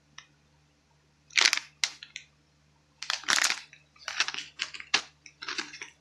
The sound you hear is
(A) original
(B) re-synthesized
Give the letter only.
A